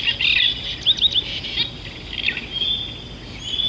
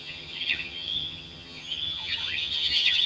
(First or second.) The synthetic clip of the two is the second